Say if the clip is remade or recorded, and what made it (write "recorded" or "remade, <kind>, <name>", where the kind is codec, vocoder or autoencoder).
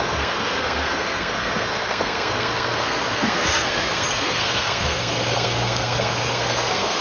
remade, codec, SNAC